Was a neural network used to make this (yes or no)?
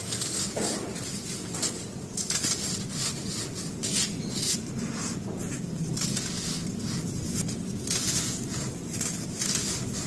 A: no